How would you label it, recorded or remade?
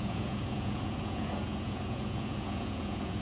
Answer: remade